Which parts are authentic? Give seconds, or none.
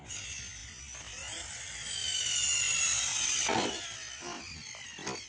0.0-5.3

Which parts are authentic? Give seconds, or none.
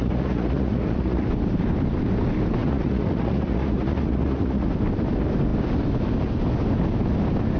1.3-2.6; 4.7-7.6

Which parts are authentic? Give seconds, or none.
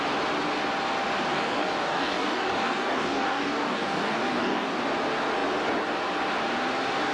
0.0-1.3; 4.8-7.1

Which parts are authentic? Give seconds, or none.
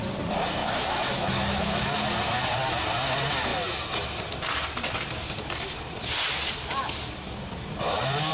0.0-0.6; 1.9-8.3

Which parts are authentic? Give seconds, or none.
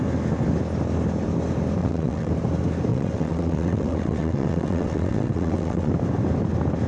0.0-1.8; 2.3-2.9; 5.9-6.9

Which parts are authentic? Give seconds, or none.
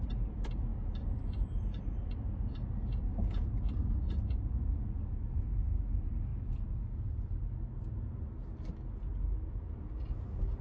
0.0-10.6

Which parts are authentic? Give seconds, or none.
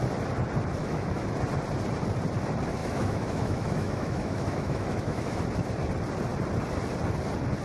0.0-0.8; 1.3-2.8; 5.4-7.6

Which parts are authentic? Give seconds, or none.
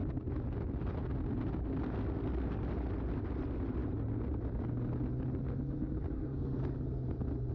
0.0-6.1; 6.6-7.5